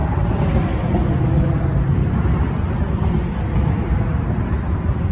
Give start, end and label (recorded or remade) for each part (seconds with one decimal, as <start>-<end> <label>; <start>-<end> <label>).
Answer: 0.0-2.0 remade; 2.0-5.1 recorded